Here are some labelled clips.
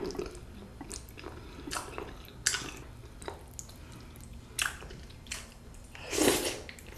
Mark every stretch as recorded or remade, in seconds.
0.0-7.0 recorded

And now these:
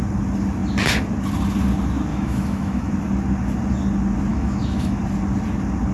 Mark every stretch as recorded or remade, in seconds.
0.0-2.1 recorded; 2.1-2.9 remade; 2.9-4.3 recorded; 4.3-5.0 remade; 5.0-5.9 recorded

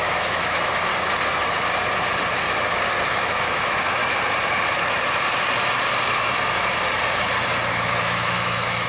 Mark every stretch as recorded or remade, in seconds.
0.0-0.9 remade; 0.9-3.1 recorded; 3.1-4.0 remade; 4.0-7.7 recorded; 7.7-8.9 remade

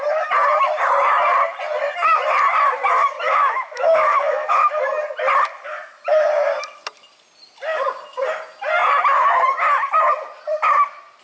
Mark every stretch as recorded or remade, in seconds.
0.0-3.0 recorded; 3.0-4.7 remade; 4.7-11.2 recorded

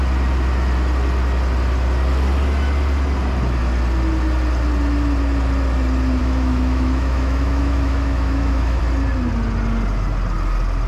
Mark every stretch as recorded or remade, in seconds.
0.0-6.2 recorded; 6.2-8.8 remade; 8.8-10.9 recorded